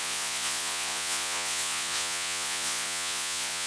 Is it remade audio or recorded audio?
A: remade